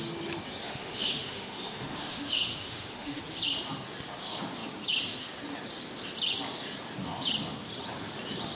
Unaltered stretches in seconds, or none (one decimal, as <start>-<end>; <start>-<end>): 0.0-0.6; 3.2-8.5